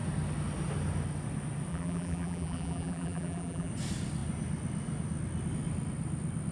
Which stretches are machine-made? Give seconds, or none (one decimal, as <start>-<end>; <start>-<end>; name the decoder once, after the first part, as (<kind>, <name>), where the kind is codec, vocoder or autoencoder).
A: 1.7-3.7 (vocoder, BigVGAN v2)